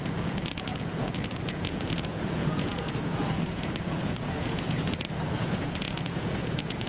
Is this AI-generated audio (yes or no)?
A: yes